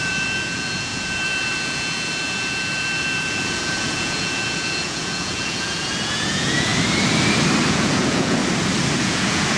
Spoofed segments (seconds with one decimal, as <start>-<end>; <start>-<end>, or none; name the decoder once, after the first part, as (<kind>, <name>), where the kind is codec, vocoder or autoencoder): 0.0-6.7 (vocoder, Vocos); 7.7-8.4; 9.0-9.6